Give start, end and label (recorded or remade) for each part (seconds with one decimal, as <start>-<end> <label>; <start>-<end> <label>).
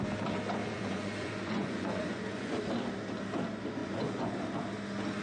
0.0-0.6 recorded; 0.6-2.6 remade; 2.6-3.8 recorded; 3.8-4.3 remade; 4.3-5.2 recorded